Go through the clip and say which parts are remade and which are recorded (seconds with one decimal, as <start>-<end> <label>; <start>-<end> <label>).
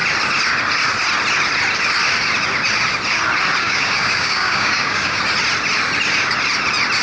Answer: 0.0-3.6 recorded; 3.6-5.2 remade; 5.2-7.0 recorded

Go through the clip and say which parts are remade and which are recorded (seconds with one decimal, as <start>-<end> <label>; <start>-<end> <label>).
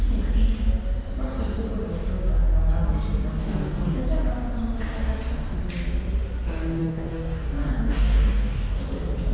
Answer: 0.0-3.4 recorded; 3.4-4.0 remade; 4.0-6.8 recorded; 6.8-8.8 remade; 8.8-9.3 recorded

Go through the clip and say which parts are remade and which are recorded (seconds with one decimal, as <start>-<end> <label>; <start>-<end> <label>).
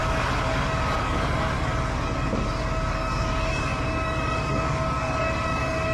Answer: 0.0-5.9 remade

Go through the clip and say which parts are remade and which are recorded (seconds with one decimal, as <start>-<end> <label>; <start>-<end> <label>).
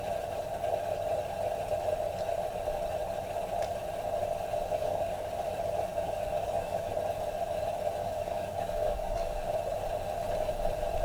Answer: 0.0-4.8 recorded; 4.8-5.3 remade; 5.3-5.9 recorded; 5.9-6.9 remade; 6.9-8.0 recorded; 8.0-9.5 remade; 9.5-11.0 recorded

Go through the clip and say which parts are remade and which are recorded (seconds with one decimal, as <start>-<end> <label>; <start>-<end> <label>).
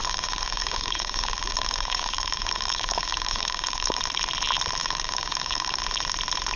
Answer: 0.0-4.0 remade; 4.0-4.8 recorded; 4.8-5.8 remade; 5.8-6.6 recorded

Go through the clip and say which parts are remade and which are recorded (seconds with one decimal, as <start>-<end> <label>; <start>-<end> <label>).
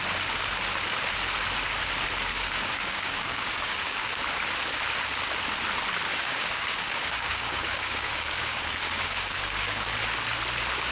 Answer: 0.0-2.3 recorded; 2.3-4.2 remade; 4.2-6.1 recorded; 6.1-9.9 remade; 9.9-10.9 recorded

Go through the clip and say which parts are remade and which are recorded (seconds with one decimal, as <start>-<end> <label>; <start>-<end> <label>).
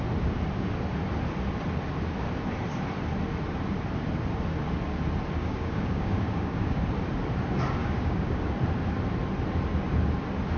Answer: 0.0-5.4 recorded; 5.4-6.8 remade; 6.8-7.8 recorded; 7.8-8.4 remade; 8.4-10.6 recorded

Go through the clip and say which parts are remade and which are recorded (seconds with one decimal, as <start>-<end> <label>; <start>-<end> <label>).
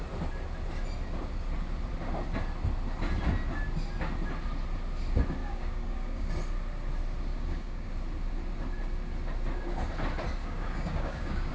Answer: 0.0-5.4 recorded; 5.4-6.3 remade; 6.3-7.3 recorded; 7.3-7.9 remade; 7.9-10.4 recorded; 10.4-11.5 remade